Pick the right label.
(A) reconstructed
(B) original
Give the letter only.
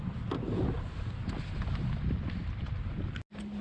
B